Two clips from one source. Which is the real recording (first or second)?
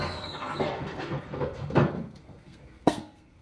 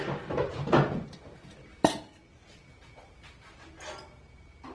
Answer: second